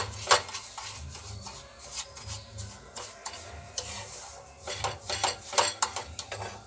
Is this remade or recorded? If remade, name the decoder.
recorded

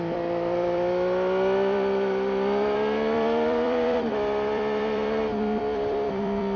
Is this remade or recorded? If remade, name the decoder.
remade, vocoder, BigVGAN v2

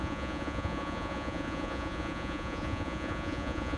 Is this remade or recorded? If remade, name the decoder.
remade, vocoder, Vocos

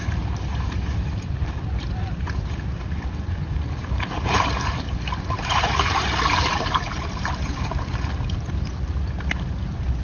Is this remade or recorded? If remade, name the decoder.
remade, vocoder, BigVGAN v2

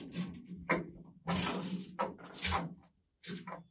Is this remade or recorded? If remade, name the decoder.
recorded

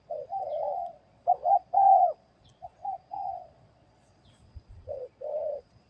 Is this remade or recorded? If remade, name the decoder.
remade, vocoder, Vocos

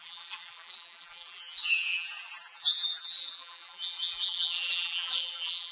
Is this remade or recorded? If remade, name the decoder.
remade, vocoder, BigVGAN v2